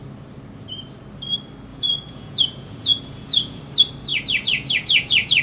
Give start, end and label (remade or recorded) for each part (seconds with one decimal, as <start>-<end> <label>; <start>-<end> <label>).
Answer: 0.0-1.7 recorded; 1.7-3.6 remade; 3.6-4.1 recorded; 4.1-5.4 remade